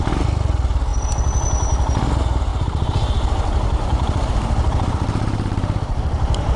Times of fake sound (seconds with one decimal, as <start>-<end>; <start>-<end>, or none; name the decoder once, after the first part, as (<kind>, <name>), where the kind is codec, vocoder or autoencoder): 2.5-6.6 (vocoder, BigVGAN v2)